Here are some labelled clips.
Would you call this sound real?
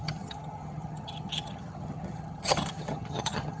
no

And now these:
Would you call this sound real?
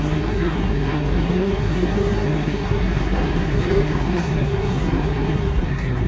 no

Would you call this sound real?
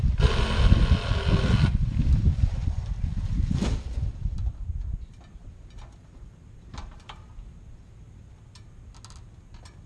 yes